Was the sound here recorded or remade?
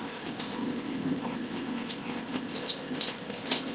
remade